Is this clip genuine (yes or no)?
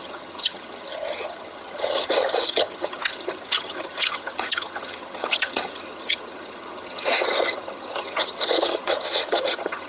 no